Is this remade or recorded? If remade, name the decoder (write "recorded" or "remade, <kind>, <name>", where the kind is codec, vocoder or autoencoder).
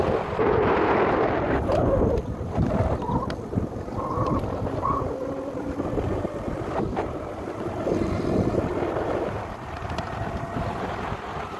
remade, vocoder, BigVGAN v2